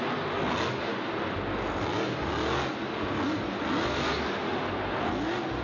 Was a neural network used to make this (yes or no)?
no